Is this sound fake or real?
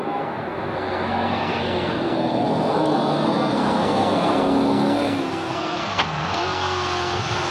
fake